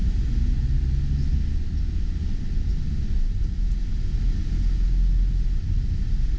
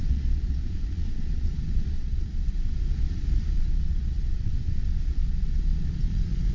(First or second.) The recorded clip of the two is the first